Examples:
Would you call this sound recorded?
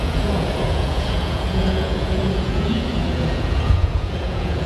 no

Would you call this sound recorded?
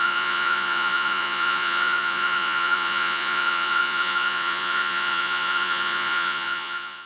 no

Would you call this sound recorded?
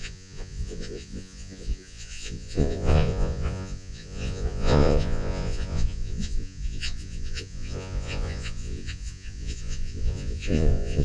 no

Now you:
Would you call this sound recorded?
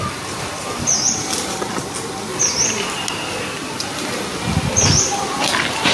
yes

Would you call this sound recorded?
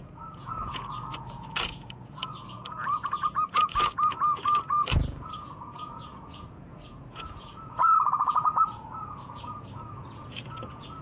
no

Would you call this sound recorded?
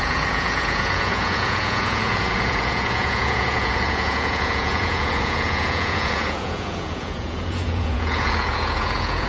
no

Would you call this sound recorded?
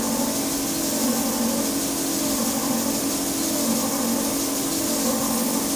yes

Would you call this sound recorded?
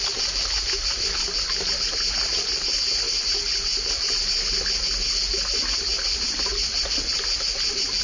yes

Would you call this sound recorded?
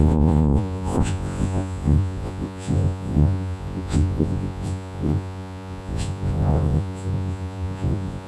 no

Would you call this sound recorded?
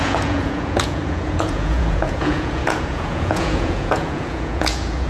no